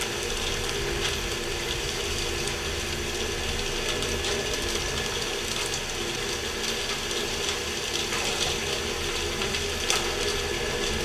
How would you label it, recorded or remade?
recorded